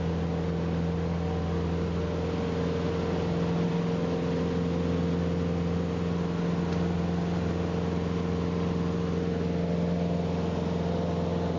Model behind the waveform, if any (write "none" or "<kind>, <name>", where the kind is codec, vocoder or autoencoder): none